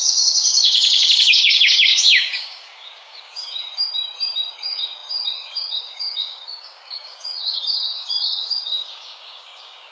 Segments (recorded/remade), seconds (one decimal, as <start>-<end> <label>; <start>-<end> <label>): 0.0-3.9 remade; 3.9-4.5 recorded; 4.5-9.9 remade

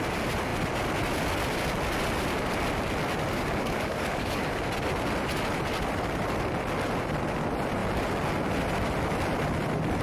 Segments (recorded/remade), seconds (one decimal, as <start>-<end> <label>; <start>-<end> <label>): 0.0-3.3 recorded; 3.3-4.6 remade; 4.6-10.0 recorded

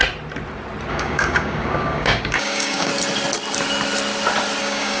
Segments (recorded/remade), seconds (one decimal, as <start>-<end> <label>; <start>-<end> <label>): 0.0-0.9 recorded; 0.9-2.9 remade; 2.9-4.6 recorded; 4.6-5.0 remade

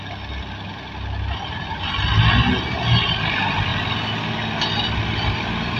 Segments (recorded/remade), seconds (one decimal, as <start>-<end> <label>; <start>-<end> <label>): 0.0-5.8 recorded

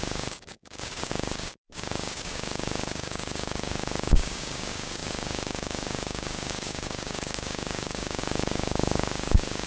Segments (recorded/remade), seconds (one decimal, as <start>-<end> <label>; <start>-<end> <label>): 0.0-9.7 remade